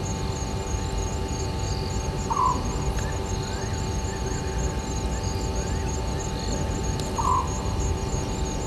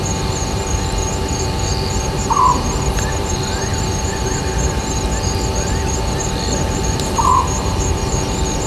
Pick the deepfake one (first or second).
second